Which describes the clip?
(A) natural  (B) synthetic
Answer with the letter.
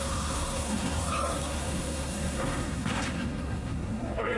B